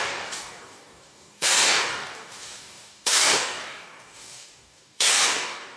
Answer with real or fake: fake